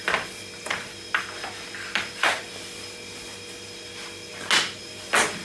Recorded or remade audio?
recorded